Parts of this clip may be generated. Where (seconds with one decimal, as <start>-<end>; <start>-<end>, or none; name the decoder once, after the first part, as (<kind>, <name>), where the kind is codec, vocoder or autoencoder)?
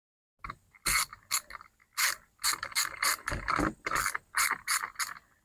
none